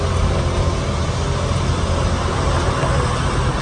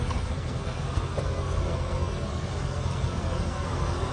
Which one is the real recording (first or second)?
first